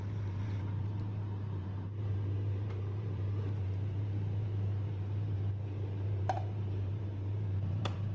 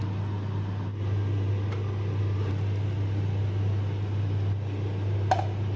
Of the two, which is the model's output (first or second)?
first